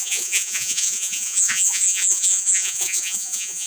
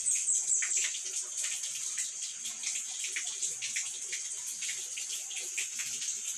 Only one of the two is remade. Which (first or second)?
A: first